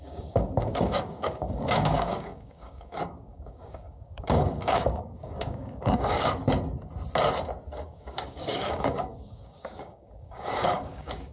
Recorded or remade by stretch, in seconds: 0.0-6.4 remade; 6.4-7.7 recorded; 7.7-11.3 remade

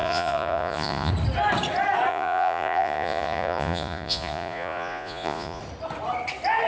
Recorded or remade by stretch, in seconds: 0.0-1.1 remade; 1.1-2.1 recorded; 2.1-5.6 remade; 5.6-6.7 recorded

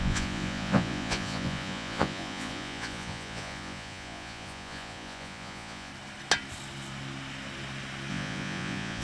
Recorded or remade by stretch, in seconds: 0.0-5.9 remade; 5.9-8.1 recorded; 8.1-9.0 remade

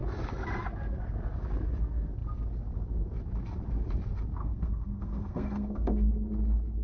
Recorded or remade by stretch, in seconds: 0.0-4.4 recorded; 4.4-6.1 remade; 6.1-6.8 recorded

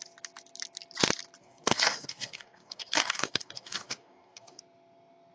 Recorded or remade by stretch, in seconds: 0.0-1.4 recorded; 1.4-4.6 remade; 4.6-5.3 recorded